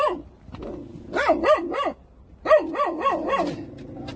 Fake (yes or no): no